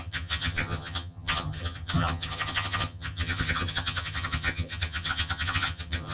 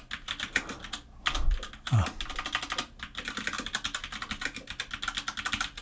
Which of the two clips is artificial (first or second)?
first